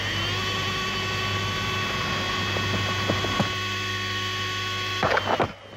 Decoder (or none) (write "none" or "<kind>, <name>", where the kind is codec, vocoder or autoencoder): none